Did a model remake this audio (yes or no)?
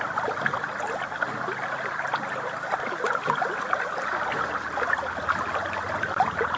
no